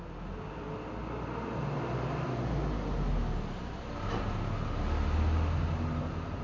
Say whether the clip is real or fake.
real